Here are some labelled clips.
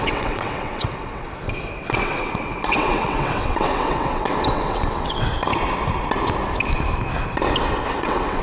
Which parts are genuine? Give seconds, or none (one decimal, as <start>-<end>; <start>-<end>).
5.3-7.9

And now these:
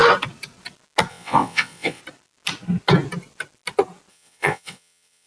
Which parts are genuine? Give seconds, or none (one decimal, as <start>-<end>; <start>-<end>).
0.0-1.1; 2.0-4.1

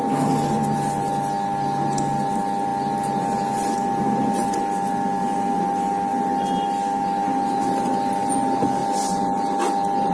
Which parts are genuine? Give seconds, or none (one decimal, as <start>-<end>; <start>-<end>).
0.0-10.1

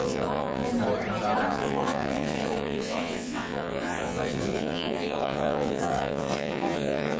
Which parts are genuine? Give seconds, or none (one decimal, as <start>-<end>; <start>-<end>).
0.7-1.5